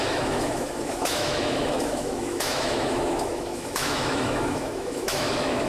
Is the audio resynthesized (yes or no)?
yes